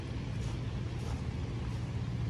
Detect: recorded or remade recorded